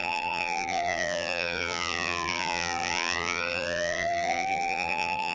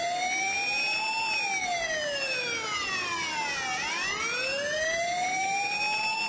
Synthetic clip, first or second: first